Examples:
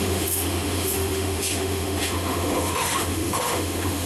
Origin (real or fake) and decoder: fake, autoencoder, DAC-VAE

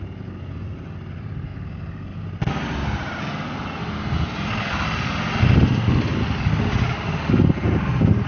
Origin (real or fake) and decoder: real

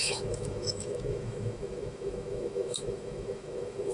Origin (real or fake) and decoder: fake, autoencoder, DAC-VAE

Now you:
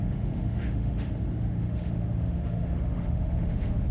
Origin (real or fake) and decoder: fake, autoencoder, DAC-VAE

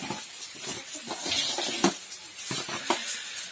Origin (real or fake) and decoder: real